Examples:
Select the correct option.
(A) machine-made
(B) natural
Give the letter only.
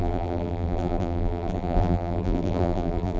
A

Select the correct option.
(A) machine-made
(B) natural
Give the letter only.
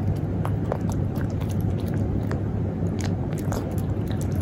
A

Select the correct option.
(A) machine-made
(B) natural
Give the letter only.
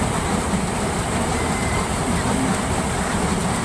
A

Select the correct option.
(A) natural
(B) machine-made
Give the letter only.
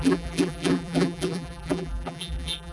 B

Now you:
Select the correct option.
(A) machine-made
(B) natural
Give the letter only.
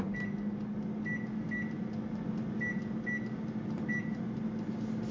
B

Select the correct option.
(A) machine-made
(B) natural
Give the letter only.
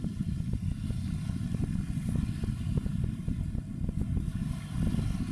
B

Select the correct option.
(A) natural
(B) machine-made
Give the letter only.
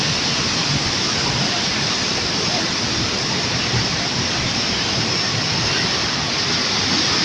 B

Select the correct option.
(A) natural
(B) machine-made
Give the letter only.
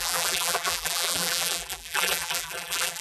B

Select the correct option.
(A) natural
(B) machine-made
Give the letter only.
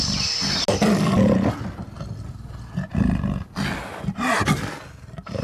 A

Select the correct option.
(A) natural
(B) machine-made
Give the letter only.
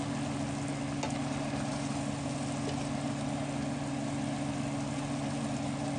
A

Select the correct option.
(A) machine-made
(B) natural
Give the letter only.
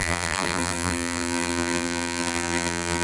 A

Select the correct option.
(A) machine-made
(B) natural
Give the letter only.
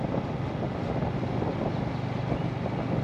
B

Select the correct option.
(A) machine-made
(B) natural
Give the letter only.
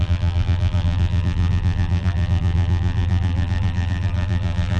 A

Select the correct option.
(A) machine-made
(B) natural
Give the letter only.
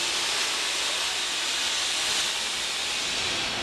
B